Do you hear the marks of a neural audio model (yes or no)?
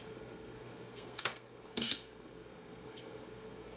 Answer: yes